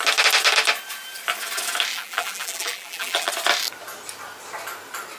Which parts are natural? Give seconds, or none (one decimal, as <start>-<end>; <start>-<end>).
0.0-1.9; 3.3-5.2